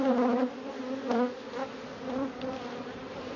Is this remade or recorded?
recorded